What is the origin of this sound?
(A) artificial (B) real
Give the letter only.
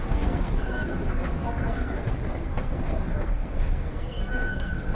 A